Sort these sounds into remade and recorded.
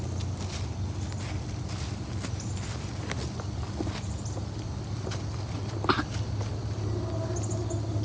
recorded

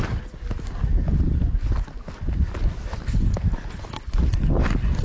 recorded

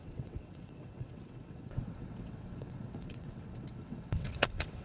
remade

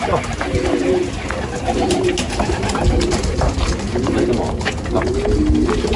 recorded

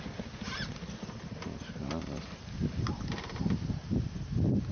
recorded